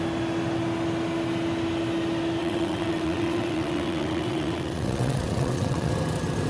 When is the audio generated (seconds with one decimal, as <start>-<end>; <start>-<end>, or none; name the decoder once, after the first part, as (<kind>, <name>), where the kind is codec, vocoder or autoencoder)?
2.4-5.9 (vocoder, WaveNeXt)